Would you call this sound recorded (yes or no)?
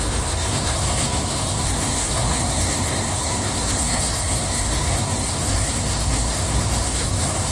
no